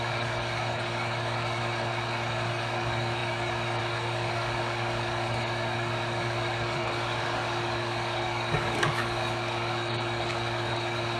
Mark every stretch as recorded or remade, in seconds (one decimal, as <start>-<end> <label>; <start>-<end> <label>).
0.0-11.2 remade